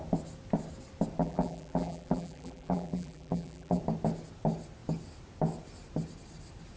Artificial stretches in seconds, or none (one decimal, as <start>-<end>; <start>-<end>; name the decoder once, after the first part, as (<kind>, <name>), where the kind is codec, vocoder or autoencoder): 1.2-3.8 (vocoder, BigVGAN v2)